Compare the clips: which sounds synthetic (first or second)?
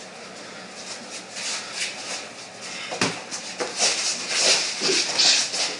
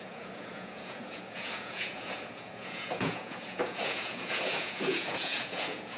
second